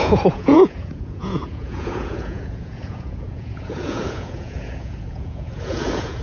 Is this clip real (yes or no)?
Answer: no